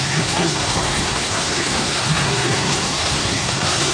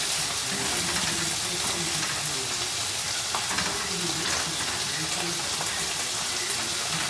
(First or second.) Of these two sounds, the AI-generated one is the first